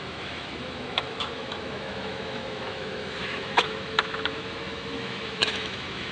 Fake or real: fake